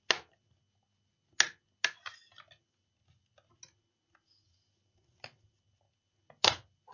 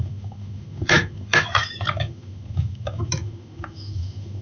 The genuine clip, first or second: first